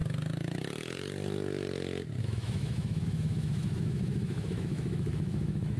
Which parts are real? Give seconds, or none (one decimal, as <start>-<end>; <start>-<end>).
0.0-2.2